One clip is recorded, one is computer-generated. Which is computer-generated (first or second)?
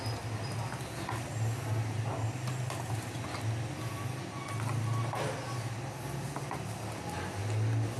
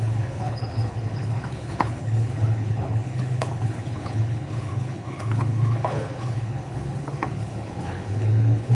second